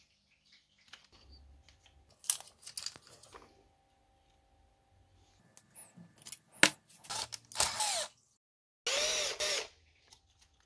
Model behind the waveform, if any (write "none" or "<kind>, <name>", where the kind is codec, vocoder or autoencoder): none